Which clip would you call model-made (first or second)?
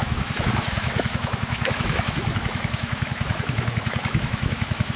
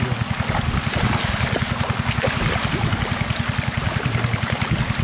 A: first